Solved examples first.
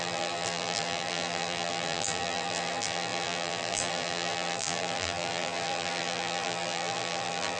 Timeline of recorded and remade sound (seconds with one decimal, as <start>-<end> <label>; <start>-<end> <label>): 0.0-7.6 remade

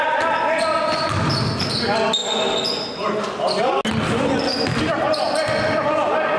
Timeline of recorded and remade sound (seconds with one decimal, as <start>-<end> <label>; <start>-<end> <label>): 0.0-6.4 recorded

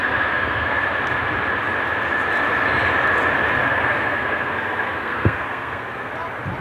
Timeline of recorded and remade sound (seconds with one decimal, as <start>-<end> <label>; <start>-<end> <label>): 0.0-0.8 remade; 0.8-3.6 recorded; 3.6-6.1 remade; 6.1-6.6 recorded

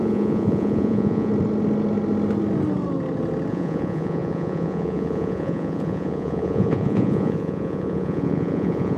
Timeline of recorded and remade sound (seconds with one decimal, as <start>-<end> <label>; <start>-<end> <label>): 0.0-1.3 remade; 1.3-3.5 recorded; 3.5-9.0 remade